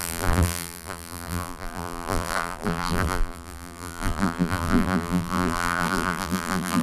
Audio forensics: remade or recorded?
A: remade